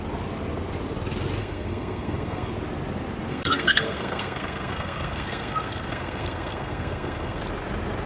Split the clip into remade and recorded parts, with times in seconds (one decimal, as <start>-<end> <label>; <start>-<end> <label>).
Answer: 0.0-1.4 recorded; 1.4-2.5 remade; 2.5-3.3 recorded; 3.3-7.4 remade; 7.4-8.1 recorded